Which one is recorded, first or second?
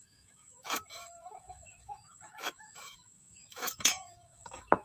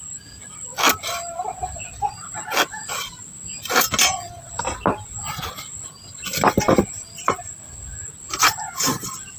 second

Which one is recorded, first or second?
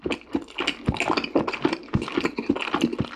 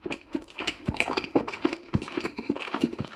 first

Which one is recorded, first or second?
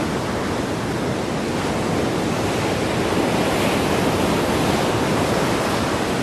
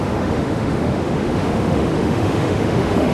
first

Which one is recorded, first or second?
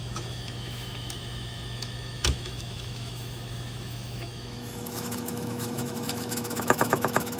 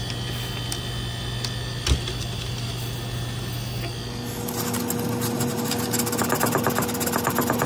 second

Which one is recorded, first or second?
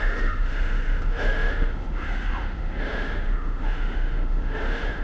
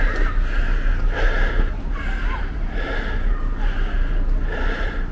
second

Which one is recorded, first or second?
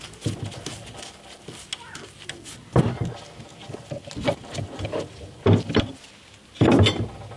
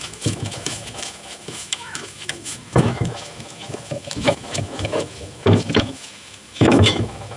first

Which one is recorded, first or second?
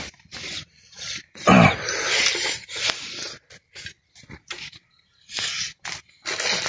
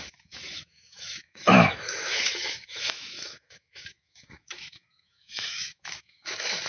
first